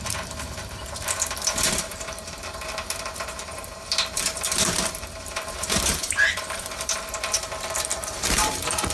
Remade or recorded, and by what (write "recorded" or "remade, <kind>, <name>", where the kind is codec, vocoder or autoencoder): remade, vocoder, BigVGAN v2